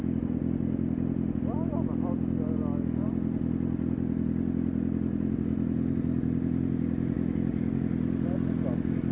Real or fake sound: real